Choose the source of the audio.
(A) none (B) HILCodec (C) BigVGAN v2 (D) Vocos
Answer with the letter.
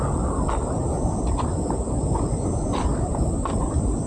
C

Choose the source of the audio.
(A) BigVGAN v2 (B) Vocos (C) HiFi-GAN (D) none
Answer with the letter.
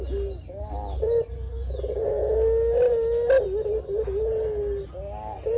D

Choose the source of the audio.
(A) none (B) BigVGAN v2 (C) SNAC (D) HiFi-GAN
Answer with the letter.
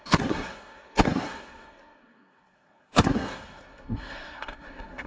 C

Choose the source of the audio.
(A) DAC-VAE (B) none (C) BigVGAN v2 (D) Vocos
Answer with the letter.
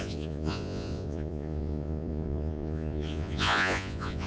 D